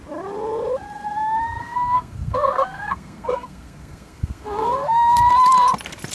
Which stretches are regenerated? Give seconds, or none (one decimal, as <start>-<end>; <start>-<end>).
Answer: 1.6-5.3